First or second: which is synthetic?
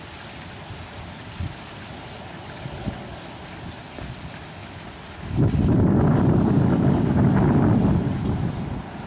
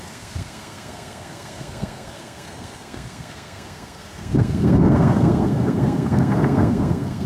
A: second